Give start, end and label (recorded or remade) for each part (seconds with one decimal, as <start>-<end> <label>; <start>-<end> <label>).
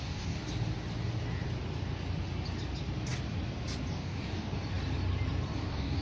0.0-0.4 remade; 0.4-3.9 recorded; 3.9-4.6 remade; 4.6-5.6 recorded; 5.6-6.0 remade